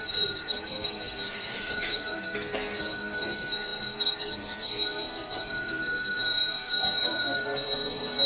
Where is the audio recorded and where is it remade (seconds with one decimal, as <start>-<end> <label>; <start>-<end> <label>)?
0.0-8.3 remade